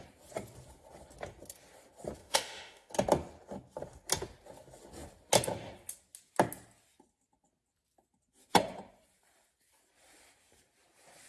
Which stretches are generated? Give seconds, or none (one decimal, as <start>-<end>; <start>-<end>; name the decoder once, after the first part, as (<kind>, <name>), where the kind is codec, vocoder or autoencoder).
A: 2.2-2.9 (autoencoder, DAC-VAE)